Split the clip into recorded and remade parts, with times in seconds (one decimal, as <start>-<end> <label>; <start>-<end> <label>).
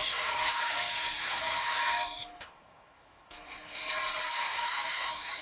0.0-3.8 remade; 3.8-4.3 recorded; 4.3-5.4 remade